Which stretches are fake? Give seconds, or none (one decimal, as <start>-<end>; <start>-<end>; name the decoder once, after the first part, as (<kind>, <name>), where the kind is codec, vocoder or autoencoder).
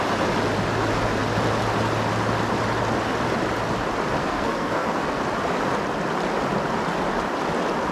4.2-5.2 (codec, SNAC)